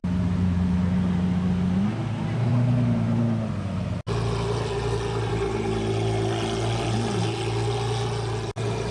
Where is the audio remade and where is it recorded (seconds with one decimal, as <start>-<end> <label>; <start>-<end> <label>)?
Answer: 0.0-8.9 recorded